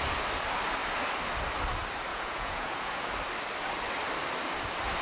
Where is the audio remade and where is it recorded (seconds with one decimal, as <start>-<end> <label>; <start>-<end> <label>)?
0.0-2.1 recorded; 2.1-3.1 remade; 3.1-5.0 recorded